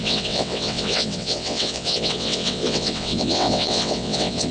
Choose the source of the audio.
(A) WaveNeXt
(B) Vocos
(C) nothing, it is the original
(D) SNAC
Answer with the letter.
A